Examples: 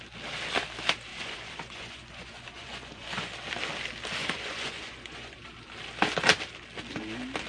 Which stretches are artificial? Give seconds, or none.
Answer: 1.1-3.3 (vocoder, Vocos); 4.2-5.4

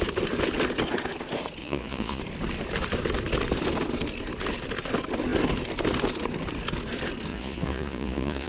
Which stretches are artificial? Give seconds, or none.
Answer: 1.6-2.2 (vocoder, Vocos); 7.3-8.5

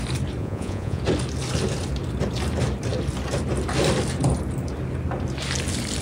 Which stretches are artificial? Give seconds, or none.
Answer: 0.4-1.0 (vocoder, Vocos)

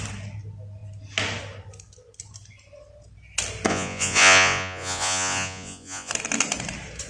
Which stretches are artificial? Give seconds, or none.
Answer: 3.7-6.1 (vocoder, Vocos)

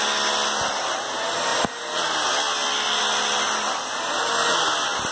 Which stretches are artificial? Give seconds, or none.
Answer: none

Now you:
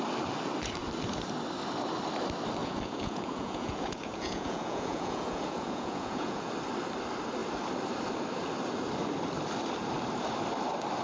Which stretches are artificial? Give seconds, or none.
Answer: 2.6-6.5 (vocoder, Vocos)

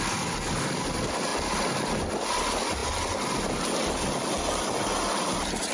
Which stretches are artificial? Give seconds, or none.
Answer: none

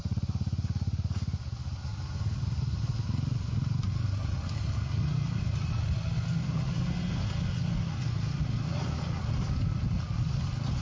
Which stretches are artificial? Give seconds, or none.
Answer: none